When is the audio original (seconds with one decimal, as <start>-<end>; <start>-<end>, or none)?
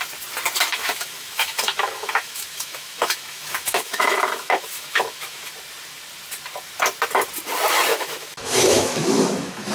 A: 0.0-0.7; 5.5-7.9